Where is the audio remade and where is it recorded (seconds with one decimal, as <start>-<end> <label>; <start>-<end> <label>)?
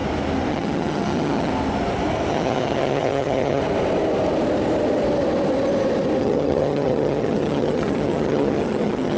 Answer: 0.0-0.5 recorded; 0.5-1.5 remade; 1.5-2.3 recorded; 2.3-3.6 remade; 3.6-6.2 recorded; 6.2-9.2 remade